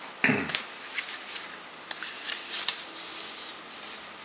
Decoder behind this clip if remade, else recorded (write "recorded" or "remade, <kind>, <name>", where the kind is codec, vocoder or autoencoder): recorded